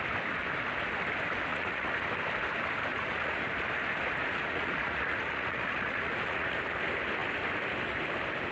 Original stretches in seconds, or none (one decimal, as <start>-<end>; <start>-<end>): 0.0-1.5; 2.1-2.9; 3.5-4.2; 6.6-8.5

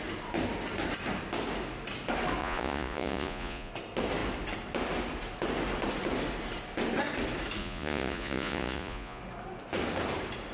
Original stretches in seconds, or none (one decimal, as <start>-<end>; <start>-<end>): 0.0-2.4; 3.7-7.6; 9.2-10.5

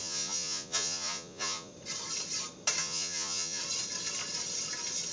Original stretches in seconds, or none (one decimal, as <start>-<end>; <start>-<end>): 1.7-2.8; 3.6-5.1

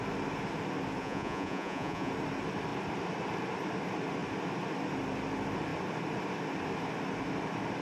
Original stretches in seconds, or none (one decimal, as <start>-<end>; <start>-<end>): 0.0-1.0; 2.1-7.8